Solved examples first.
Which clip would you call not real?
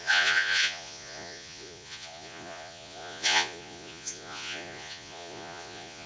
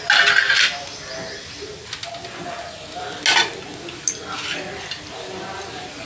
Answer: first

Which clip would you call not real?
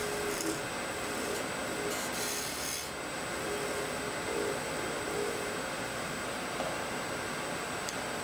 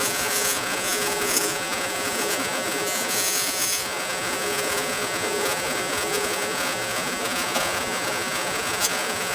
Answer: second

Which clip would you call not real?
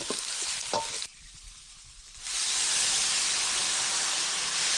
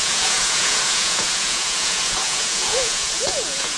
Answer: second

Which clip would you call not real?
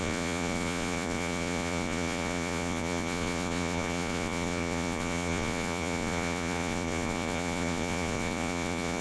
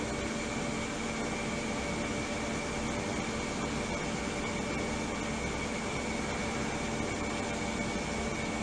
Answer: first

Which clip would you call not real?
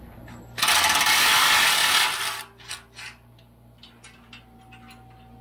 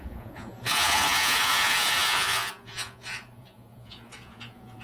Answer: second